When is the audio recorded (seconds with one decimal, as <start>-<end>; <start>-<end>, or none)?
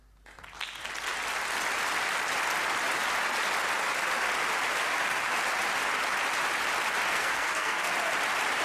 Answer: 0.0-7.1; 7.9-8.6